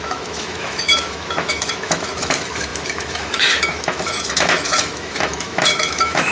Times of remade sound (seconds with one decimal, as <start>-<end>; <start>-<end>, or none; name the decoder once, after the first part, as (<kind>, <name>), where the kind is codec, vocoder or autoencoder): 0.0-6.3 (autoencoder, DAC-VAE)